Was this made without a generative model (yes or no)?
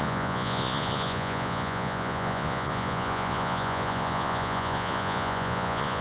no